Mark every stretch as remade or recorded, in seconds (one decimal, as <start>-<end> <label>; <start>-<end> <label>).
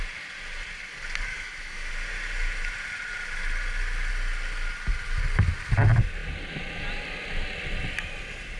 0.0-1.3 recorded; 1.3-1.9 remade; 1.9-8.6 recorded